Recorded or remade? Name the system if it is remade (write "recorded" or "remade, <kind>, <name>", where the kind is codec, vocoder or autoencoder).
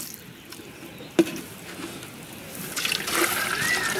recorded